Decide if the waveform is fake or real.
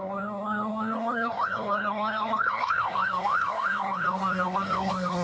fake